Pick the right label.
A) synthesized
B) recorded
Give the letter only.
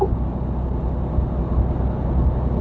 B